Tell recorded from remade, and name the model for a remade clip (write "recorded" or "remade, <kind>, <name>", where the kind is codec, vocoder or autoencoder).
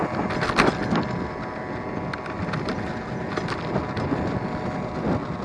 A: recorded